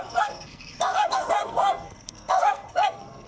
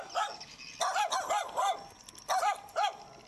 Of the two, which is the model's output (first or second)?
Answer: first